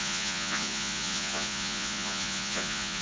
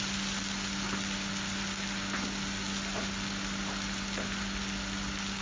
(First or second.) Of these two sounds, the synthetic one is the first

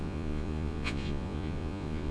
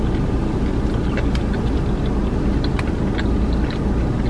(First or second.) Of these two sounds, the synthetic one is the first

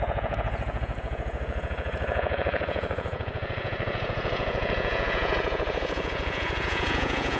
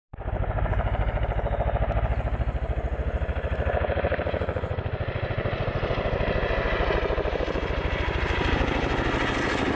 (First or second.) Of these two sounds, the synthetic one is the first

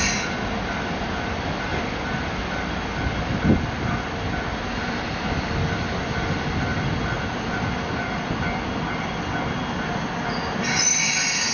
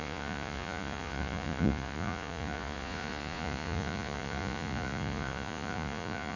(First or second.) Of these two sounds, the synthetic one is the second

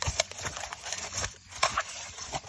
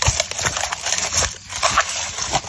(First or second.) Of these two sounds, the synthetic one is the first